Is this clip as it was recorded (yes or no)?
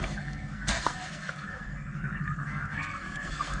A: no